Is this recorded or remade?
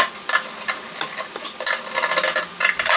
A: recorded